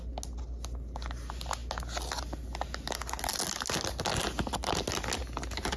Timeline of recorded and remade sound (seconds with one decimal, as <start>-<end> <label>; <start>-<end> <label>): 0.0-5.8 recorded